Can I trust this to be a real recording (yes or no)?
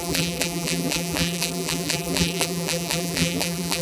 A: no